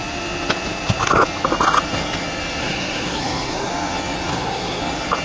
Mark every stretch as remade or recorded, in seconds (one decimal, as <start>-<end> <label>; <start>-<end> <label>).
0.0-2.6 recorded; 2.6-3.7 remade; 3.7-4.3 recorded; 4.3-4.8 remade; 4.8-5.2 recorded